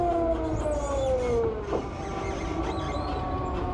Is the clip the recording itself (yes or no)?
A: yes